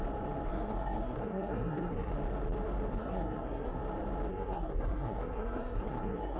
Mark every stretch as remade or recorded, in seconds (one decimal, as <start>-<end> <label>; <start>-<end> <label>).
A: 0.0-0.5 recorded; 0.5-2.1 remade; 2.1-2.9 recorded; 2.9-3.8 remade; 3.8-4.3 recorded; 4.3-6.4 remade